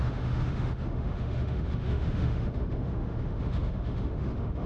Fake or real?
fake